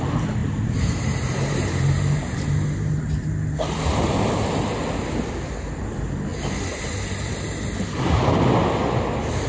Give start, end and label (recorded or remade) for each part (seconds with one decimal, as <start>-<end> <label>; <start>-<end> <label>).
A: 0.0-0.4 recorded; 0.4-3.0 remade; 3.0-9.5 recorded